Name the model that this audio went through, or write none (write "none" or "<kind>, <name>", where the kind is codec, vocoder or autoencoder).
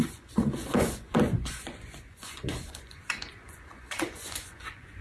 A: vocoder, Vocos